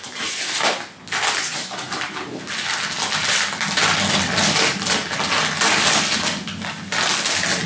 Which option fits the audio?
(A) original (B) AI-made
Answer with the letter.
A